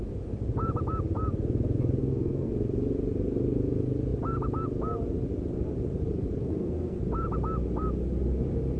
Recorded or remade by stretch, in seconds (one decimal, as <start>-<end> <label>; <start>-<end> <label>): 0.0-2.0 recorded; 2.0-2.5 remade; 2.5-6.4 recorded; 6.4-7.0 remade; 7.0-8.8 recorded